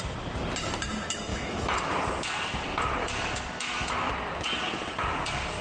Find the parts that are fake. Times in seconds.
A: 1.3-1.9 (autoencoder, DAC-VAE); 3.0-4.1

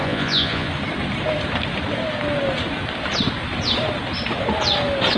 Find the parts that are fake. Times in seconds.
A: 0.0-0.7 (vocoder, Vocos)